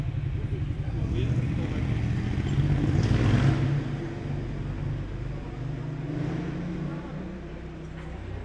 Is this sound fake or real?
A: real